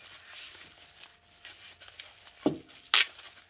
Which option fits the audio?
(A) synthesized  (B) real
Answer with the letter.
B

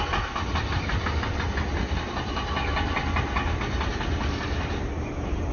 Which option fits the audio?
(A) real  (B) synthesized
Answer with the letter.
A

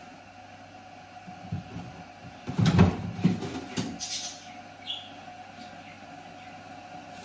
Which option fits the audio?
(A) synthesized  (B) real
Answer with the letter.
B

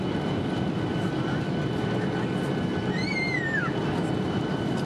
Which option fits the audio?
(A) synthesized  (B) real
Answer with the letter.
B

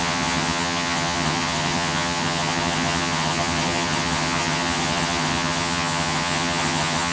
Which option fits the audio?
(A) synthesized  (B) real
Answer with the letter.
A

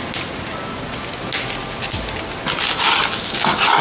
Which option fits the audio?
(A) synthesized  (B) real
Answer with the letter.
B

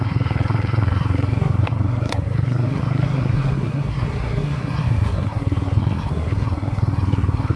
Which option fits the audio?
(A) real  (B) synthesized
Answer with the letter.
B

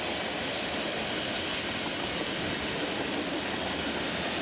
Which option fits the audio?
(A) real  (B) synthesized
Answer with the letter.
A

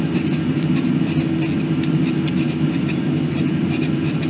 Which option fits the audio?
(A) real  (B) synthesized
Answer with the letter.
A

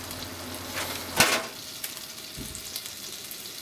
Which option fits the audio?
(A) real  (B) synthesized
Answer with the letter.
A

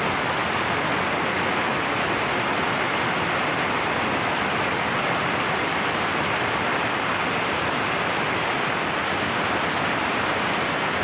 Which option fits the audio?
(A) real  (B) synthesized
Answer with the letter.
A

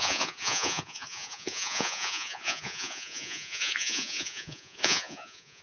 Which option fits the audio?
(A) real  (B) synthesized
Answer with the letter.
B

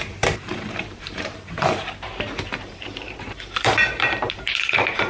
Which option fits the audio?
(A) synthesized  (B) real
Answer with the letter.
A